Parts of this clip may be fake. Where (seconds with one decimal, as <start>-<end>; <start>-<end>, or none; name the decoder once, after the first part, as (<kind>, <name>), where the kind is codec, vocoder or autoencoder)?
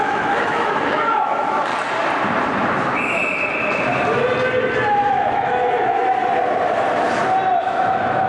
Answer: 0.0-1.7 (autoencoder, DAC-VAE); 4.9-6.2; 7.6-8.3